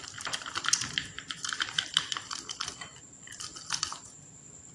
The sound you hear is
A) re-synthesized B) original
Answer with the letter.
B